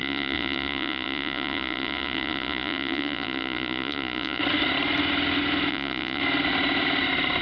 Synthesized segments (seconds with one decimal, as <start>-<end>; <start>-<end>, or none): 0.0-4.4; 5.7-6.2